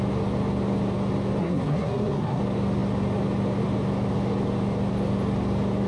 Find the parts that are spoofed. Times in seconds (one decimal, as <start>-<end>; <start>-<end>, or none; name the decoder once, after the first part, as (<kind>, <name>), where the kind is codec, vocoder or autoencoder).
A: 1.4-2.4 (codec, SNAC)